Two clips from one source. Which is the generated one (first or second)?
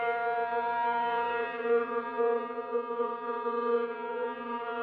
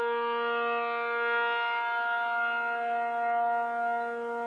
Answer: first